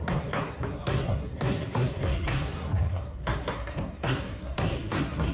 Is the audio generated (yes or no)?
yes